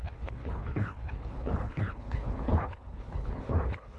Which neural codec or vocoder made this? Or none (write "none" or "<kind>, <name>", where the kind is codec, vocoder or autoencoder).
codec, HILCodec